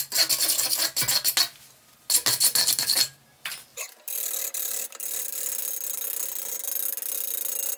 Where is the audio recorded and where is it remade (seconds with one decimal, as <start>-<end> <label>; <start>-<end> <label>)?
0.0-3.7 recorded; 3.7-5.6 remade; 5.6-7.8 recorded